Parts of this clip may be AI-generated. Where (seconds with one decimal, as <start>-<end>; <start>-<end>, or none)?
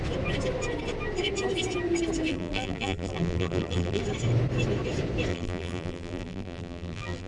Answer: 2.3-4.0; 5.3-7.3